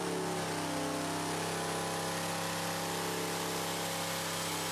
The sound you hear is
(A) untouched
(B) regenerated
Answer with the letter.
A